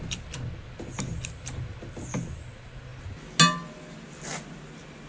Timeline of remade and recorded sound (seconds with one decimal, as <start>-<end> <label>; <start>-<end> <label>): 0.0-5.1 recorded